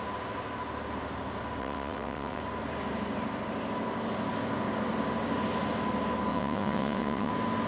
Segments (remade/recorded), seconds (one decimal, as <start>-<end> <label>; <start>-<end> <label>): 0.0-1.6 recorded; 1.6-2.4 remade; 2.4-6.3 recorded; 6.3-7.3 remade; 7.3-7.7 recorded